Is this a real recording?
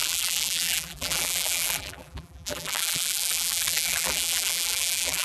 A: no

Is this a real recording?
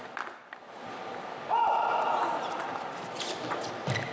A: yes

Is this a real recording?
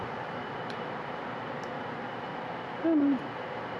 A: no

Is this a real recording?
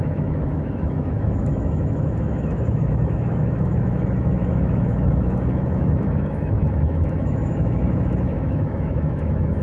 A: no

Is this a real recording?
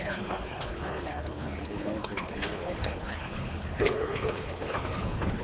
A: no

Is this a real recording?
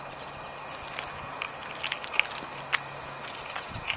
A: yes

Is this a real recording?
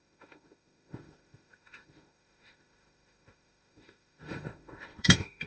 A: no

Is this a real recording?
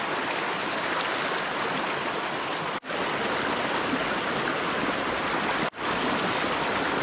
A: yes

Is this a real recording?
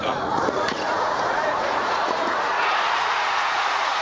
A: no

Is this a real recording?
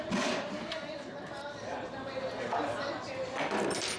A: yes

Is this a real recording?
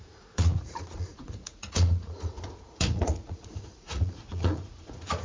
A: no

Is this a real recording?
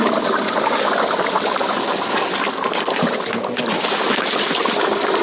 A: yes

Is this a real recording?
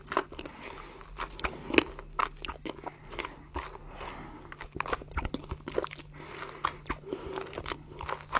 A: yes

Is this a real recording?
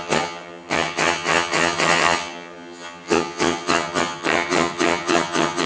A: no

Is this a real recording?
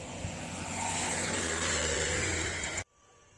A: no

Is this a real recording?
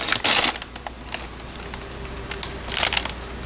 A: yes